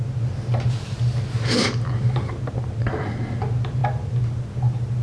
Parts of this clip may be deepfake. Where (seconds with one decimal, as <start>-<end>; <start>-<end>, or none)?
none